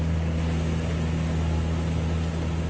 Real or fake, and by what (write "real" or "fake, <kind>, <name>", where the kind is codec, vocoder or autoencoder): real